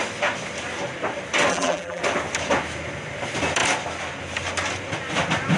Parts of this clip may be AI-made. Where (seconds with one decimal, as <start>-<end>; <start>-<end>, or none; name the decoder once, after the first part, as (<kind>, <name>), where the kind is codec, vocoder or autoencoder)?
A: 1.5-2.0 (vocoder, BigVGAN v2)